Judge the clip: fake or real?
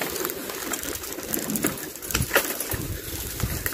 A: fake